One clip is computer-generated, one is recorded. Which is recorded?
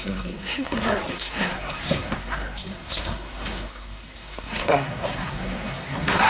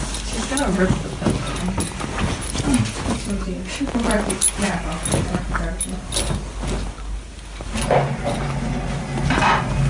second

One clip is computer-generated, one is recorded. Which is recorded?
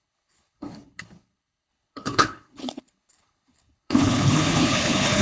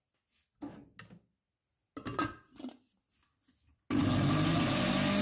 second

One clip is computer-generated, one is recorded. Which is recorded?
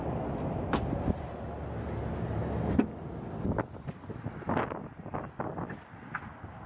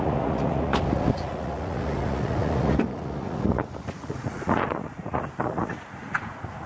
first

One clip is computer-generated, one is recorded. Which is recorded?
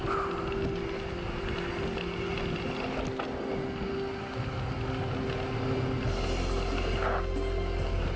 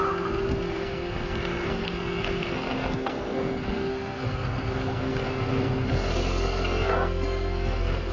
first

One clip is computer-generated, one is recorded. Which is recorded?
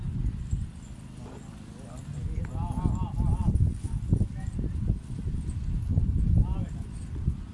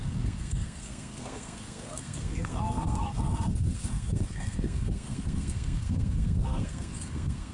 first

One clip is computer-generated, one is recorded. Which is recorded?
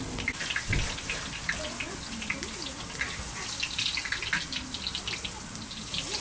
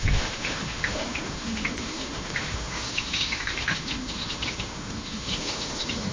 first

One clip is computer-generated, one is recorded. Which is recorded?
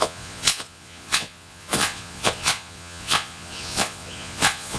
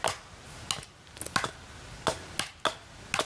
second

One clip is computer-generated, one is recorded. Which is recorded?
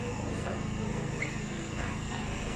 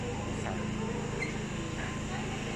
second